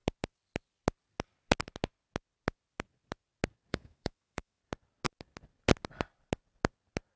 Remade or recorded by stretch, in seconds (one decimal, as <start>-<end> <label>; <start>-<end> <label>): 0.0-3.7 recorded; 3.7-4.6 remade; 4.6-7.2 recorded